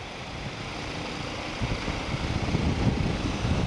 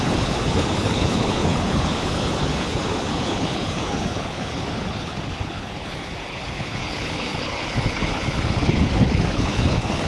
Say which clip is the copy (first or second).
second